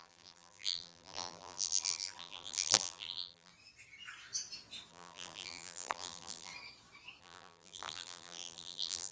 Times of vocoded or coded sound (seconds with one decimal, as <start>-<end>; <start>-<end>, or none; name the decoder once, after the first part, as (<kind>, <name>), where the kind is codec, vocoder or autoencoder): 0.0-3.5 (vocoder, BigVGAN v2); 4.9-6.5; 7.2-9.1